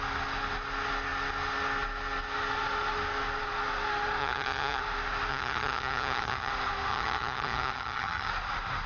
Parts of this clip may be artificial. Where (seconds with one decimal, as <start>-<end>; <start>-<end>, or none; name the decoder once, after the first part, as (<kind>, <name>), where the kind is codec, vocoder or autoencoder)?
4.2-4.8 (vocoder, HiFi-GAN); 5.3-6.5; 6.9-8.3